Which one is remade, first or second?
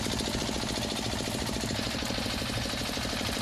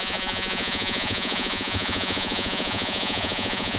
second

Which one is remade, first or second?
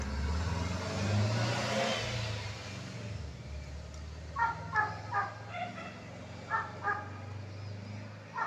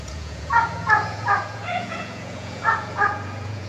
second